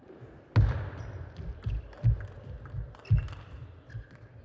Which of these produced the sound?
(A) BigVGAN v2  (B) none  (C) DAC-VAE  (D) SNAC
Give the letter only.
B